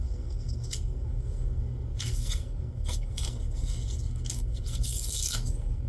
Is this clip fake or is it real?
fake